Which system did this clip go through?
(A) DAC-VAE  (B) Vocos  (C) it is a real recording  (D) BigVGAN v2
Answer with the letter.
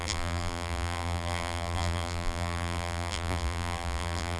D